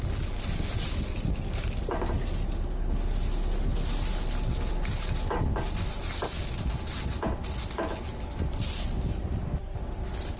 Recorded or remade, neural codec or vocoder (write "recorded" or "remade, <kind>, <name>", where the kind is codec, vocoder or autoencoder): recorded